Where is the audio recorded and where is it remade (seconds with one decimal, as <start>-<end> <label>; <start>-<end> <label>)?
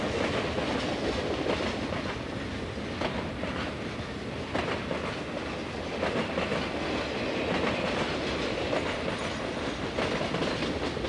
0.0-11.1 recorded